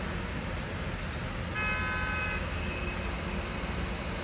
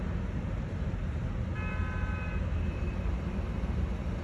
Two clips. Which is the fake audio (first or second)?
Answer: second